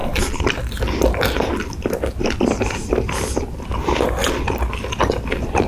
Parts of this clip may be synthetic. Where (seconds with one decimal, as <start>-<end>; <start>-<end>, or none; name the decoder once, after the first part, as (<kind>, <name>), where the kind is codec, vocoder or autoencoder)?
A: 4.2-4.7 (vocoder, BigVGAN v2)